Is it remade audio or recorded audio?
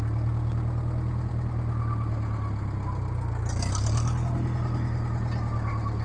recorded